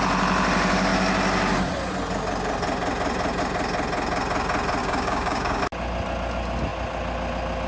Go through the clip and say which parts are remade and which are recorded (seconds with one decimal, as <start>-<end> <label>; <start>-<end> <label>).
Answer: 0.0-4.8 recorded; 4.8-5.6 remade; 5.6-7.7 recorded